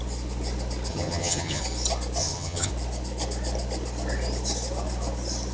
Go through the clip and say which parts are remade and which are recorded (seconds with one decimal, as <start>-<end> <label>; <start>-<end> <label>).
0.0-0.9 recorded; 0.9-1.6 remade; 1.6-2.2 recorded; 2.2-2.7 remade; 2.7-5.5 recorded